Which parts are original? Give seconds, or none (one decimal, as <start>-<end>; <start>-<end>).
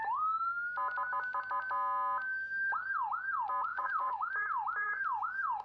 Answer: 0.0-3.7; 4.3-5.6